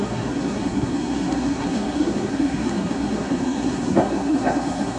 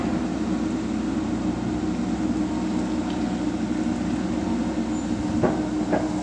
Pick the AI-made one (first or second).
first